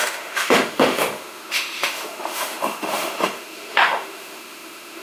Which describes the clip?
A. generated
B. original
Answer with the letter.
A